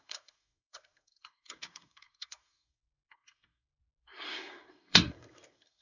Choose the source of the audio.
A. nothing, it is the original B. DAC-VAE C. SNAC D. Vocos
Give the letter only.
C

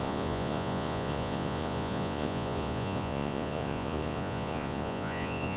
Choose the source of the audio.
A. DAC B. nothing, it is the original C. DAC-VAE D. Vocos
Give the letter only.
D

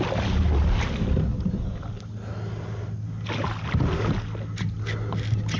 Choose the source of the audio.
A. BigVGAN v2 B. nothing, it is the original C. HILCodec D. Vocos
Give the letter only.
B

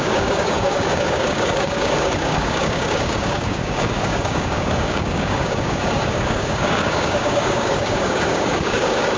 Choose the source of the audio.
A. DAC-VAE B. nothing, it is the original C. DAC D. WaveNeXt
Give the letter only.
C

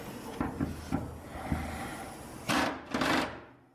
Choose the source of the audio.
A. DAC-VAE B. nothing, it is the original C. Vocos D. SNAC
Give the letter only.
B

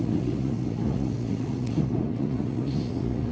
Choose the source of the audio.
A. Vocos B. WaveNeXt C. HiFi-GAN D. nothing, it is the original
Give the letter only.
A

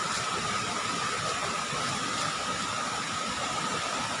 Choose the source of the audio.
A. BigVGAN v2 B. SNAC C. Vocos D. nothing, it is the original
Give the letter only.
D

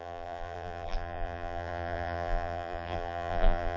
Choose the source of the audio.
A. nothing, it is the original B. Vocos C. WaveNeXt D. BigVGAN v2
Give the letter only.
D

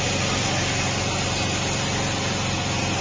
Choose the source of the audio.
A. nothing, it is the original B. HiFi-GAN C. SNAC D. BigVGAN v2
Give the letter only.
A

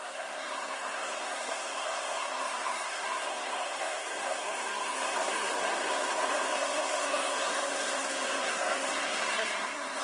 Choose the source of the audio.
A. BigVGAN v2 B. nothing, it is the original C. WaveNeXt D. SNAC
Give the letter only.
D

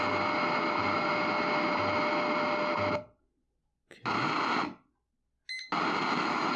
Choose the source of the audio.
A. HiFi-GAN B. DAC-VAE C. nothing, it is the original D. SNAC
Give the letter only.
C